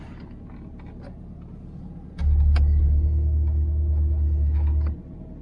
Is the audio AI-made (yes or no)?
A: no